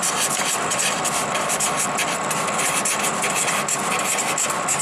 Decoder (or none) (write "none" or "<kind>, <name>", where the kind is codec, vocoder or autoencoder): vocoder, BigVGAN v2